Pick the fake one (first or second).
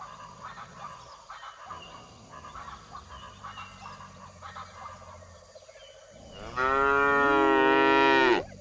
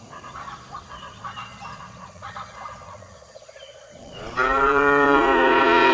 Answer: second